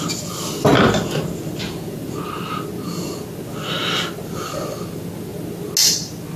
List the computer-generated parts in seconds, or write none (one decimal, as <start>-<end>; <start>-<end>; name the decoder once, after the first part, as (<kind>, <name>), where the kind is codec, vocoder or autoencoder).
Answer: none